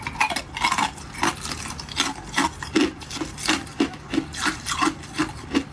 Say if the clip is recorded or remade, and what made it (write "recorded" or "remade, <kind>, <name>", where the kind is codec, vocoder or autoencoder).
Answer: recorded